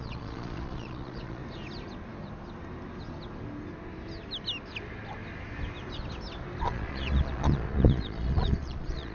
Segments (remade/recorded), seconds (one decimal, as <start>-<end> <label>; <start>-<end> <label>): 0.0-1.4 remade; 1.4-6.6 recorded; 6.6-9.1 remade